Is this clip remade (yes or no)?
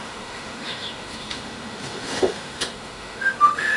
yes